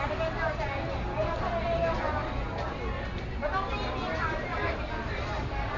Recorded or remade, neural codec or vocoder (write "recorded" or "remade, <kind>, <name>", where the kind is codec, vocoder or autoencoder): recorded